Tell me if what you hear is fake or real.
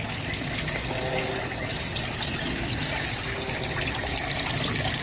real